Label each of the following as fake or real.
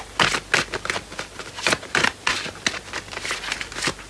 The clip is real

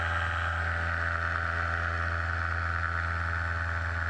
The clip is real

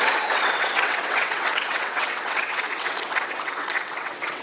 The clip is fake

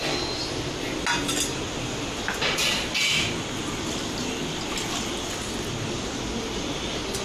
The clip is real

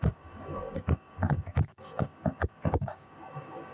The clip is fake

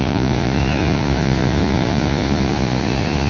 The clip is fake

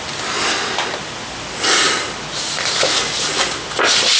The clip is real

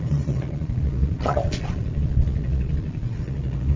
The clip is fake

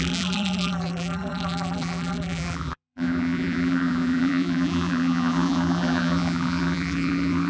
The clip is fake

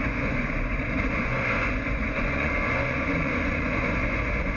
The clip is fake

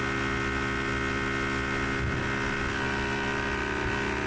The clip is real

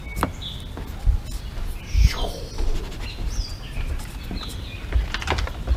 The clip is real